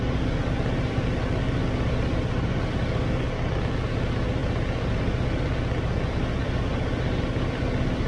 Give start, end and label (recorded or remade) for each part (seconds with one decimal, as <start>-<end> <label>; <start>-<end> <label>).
0.0-8.1 recorded